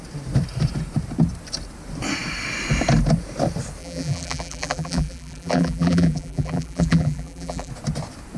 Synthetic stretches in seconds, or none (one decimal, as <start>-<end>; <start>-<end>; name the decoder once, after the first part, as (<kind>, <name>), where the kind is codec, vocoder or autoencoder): 3.8-7.7 (vocoder, BigVGAN v2)